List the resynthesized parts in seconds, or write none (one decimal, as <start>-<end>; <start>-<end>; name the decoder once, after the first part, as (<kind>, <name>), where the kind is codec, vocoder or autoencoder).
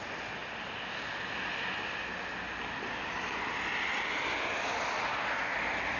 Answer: none